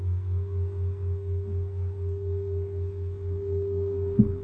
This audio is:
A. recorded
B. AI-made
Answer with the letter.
B